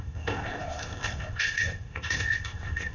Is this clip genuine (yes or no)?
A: no